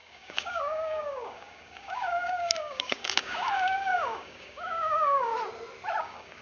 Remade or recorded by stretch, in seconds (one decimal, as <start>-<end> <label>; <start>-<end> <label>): 0.0-5.3 remade; 5.3-6.0 recorded; 6.0-6.4 remade